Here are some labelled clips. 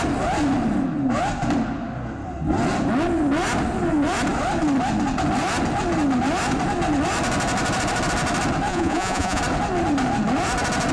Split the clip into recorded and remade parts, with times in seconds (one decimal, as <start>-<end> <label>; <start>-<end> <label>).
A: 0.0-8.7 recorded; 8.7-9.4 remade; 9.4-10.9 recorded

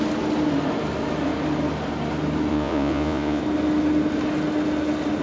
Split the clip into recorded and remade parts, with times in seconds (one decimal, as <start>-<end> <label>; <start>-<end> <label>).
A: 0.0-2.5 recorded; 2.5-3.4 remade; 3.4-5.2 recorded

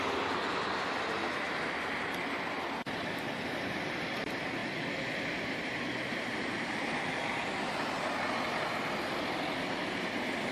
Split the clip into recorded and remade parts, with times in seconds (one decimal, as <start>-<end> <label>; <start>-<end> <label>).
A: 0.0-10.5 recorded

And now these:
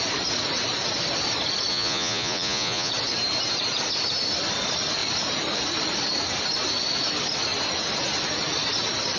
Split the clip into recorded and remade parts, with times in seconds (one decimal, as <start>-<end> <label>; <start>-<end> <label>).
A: 0.0-1.7 recorded; 1.7-2.9 remade; 2.9-9.2 recorded